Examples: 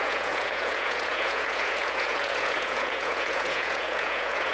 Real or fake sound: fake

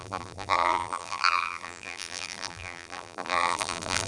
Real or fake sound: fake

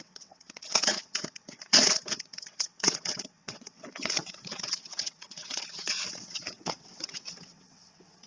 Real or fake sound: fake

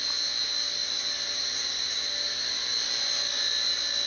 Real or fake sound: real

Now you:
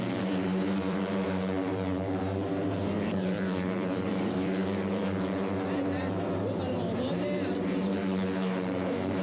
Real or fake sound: fake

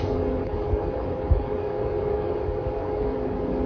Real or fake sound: fake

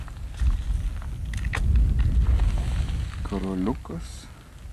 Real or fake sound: real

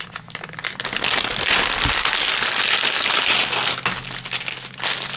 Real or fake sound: real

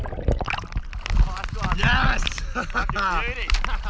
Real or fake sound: real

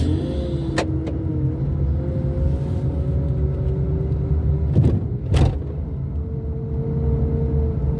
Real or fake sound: real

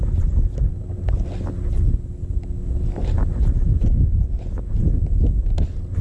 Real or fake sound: real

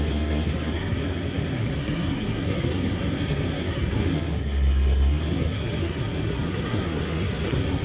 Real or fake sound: fake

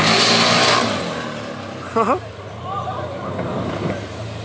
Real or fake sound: real